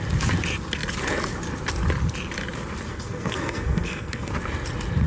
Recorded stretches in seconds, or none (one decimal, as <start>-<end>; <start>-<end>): 0.0-2.9; 4.3-5.1